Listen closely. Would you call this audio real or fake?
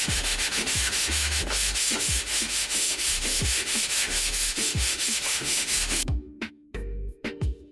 fake